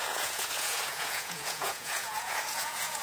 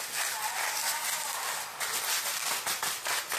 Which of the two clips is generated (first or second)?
first